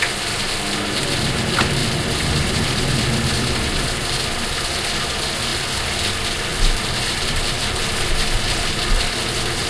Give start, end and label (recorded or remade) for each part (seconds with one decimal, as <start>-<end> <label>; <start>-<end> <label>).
0.0-1.8 recorded; 1.8-4.6 remade; 4.6-6.5 recorded; 6.5-9.1 remade; 9.1-9.7 recorded